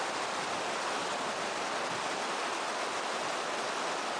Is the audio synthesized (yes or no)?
no